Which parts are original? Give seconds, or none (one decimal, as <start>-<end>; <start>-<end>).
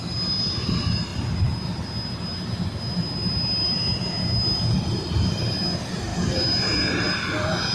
0.0-7.7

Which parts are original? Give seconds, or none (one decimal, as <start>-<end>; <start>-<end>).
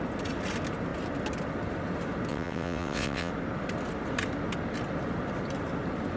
0.0-2.3; 3.3-6.2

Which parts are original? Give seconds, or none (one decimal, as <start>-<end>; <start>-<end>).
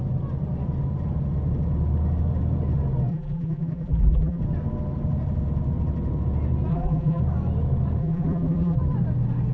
0.0-3.1; 4.4-6.7; 7.2-8.0; 8.8-9.5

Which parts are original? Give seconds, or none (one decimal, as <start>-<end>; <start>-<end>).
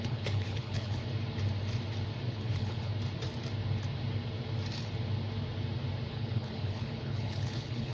1.0-2.3; 2.9-6.1